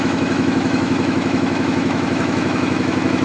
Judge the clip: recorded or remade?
remade